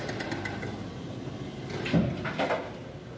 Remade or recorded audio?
recorded